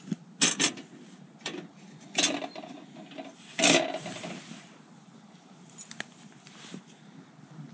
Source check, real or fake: real